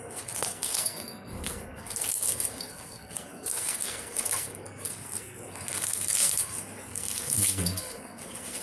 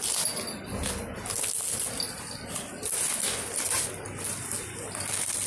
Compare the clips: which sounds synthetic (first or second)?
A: first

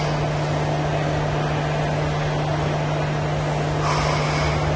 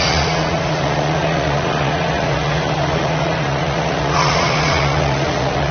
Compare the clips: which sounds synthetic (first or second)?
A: second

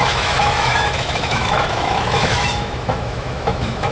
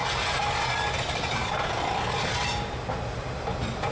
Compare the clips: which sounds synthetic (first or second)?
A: first